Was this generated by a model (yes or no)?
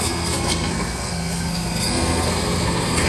yes